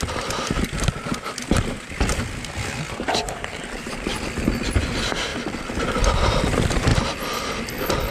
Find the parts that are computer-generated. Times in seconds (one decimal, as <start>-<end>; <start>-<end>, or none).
0.0-6.9